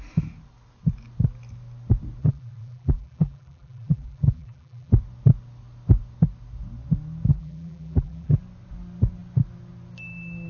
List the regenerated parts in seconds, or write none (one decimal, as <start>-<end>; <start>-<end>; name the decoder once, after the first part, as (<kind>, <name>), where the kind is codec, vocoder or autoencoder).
2.2-4.9 (vocoder, BigVGAN v2); 7.3-8.4